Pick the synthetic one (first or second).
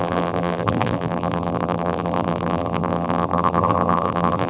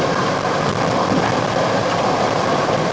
first